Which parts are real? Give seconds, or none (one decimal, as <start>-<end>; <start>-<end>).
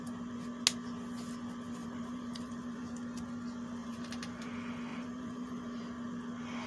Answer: 0.0-1.8; 2.9-3.8; 4.5-4.9; 5.8-6.7